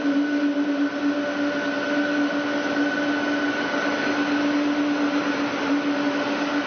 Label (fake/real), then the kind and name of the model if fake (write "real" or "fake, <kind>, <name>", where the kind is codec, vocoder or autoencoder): real